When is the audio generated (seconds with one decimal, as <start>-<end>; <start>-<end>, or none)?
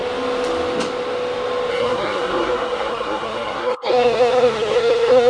1.7-5.3